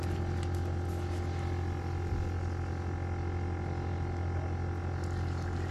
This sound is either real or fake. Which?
real